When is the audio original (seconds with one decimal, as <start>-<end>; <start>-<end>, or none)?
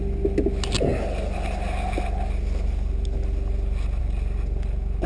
0.0-5.1